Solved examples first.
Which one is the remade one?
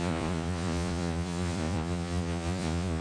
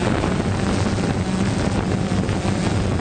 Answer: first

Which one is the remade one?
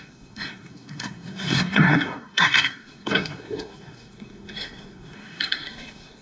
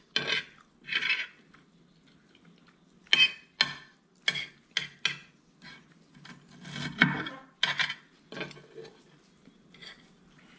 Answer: first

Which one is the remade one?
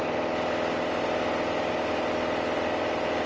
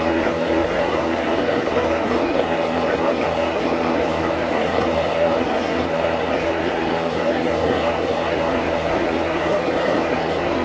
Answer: second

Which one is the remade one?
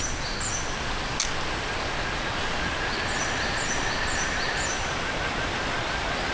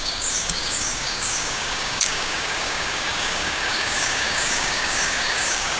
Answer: second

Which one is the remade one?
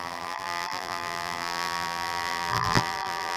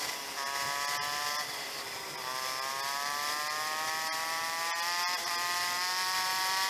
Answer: first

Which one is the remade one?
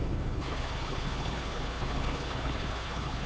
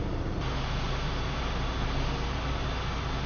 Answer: first